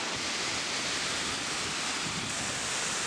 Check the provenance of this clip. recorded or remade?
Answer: recorded